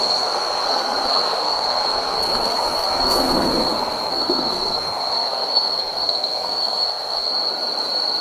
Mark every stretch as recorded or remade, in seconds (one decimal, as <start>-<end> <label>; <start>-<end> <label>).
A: 0.0-7.3 remade; 7.3-8.2 recorded